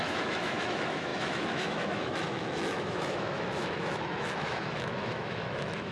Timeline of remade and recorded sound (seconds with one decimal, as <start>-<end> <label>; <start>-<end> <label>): 0.0-5.9 remade